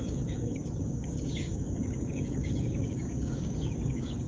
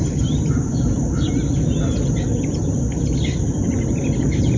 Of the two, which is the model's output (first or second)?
first